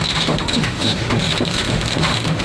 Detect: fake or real fake